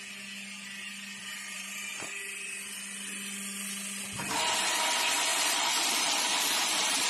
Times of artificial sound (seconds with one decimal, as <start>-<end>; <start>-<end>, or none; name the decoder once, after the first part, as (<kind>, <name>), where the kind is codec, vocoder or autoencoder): 1.2-2.8 (vocoder, BigVGAN v2); 5.3-7.1